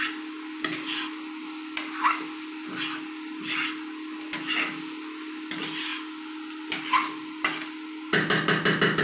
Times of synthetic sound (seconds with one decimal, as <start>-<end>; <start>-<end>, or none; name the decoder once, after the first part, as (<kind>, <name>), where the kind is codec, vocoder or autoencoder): none